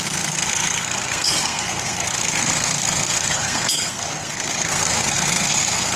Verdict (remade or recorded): remade